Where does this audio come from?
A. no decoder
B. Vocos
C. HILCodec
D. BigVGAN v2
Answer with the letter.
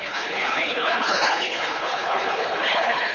C